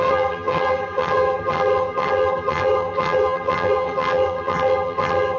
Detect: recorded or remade remade